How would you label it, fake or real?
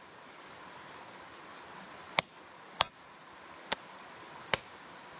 real